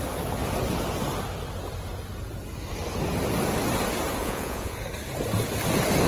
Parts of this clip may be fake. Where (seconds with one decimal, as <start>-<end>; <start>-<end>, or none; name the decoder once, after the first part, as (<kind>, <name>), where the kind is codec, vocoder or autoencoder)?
4.2-4.8 (vocoder, Vocos)